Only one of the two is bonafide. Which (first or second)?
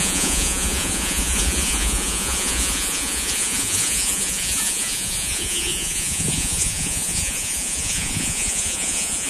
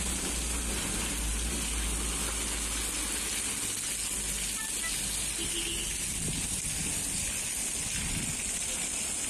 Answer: second